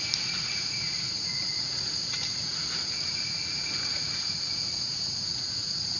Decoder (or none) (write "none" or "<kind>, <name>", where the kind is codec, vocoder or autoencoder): vocoder, Vocos